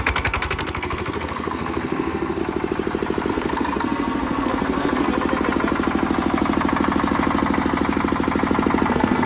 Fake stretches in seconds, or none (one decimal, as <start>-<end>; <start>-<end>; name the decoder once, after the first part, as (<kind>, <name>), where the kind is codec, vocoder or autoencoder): 0.0-2.4 (codec, SNAC); 3.3-5.1; 8.9-9.3